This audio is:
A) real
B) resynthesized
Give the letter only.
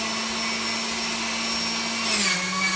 A